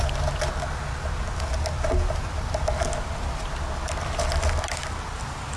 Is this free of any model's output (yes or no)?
yes